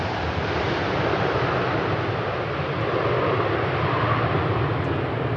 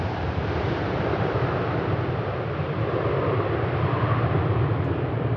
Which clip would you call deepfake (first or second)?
second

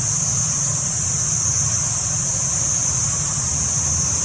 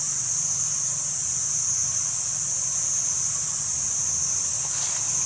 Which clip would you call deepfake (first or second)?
first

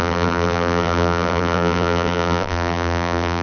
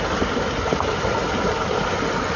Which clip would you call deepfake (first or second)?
first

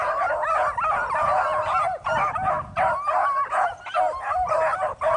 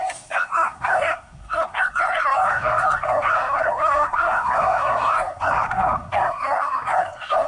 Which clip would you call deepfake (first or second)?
second